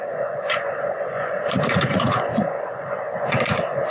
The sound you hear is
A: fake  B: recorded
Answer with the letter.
A